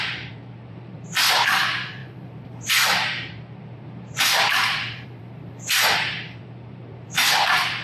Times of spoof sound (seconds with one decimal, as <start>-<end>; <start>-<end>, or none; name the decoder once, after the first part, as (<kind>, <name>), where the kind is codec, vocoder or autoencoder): 0.0-7.8 (vocoder, BigVGAN v2)